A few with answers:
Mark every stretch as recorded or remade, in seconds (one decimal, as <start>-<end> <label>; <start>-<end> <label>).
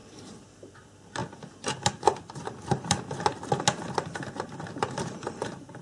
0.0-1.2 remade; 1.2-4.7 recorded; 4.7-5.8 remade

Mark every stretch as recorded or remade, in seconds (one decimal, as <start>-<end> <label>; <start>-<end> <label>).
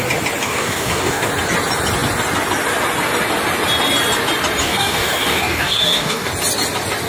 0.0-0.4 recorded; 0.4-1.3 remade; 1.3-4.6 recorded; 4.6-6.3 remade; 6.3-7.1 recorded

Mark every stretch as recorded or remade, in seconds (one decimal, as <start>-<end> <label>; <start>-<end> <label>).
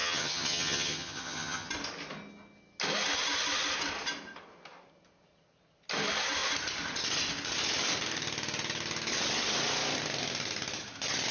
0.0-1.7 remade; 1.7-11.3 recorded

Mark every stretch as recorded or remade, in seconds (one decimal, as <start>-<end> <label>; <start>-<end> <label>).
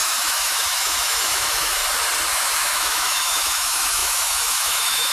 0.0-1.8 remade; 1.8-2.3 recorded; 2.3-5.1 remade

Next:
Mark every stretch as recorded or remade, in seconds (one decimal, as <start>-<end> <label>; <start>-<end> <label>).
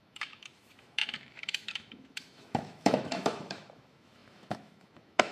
0.0-5.3 remade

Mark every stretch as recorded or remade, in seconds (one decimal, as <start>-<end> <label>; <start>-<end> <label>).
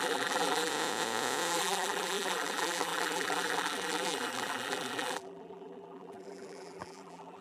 0.0-0.7 remade; 0.7-1.5 recorded; 1.5-7.4 remade